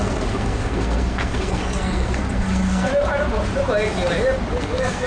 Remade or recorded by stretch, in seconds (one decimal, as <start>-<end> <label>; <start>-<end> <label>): 0.0-2.9 remade; 2.9-4.6 recorded; 4.6-5.1 remade